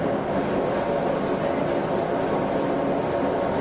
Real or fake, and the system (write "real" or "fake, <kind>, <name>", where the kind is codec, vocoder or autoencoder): real